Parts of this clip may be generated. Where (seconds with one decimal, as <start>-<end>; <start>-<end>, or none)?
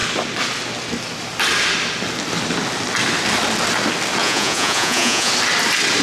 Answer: 4.2-5.3